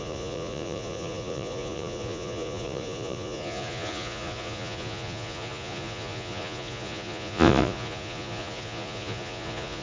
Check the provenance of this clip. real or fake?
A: fake